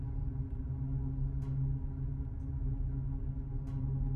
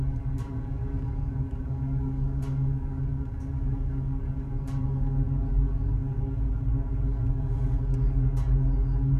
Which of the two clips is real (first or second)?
first